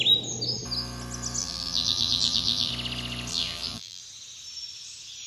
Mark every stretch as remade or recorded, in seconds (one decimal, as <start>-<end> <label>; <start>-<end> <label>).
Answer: 0.0-1.4 recorded; 1.4-2.7 remade; 2.7-3.3 recorded; 3.3-4.0 remade; 4.0-5.3 recorded